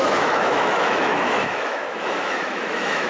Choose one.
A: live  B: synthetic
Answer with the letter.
B